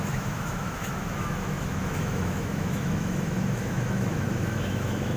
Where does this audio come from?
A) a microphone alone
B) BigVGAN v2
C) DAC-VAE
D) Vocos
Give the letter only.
C